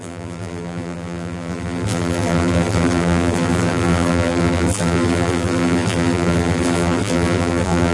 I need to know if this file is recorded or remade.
remade